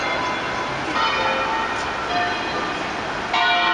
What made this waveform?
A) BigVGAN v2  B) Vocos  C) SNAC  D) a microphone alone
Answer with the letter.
D